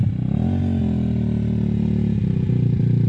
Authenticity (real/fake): real